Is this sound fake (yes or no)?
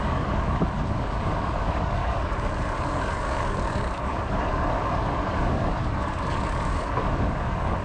yes